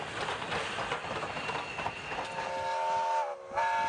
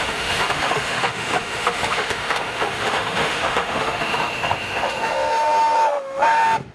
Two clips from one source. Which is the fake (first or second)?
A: second